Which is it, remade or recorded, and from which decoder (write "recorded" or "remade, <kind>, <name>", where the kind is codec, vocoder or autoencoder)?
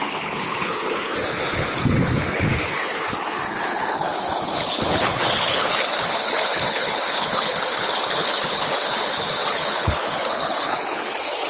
remade, codec, HILCodec